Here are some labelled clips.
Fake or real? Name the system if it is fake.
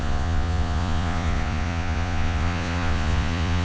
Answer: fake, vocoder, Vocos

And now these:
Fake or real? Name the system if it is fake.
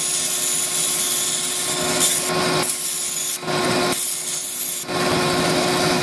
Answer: real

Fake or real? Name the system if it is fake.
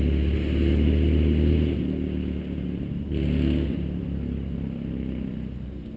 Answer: real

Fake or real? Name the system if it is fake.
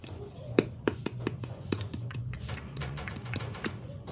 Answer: fake, vocoder, Vocos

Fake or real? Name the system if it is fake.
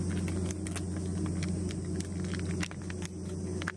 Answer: real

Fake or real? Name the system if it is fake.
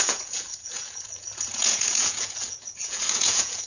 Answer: fake, vocoder, Vocos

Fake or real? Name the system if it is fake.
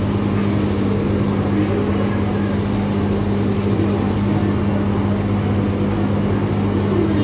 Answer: real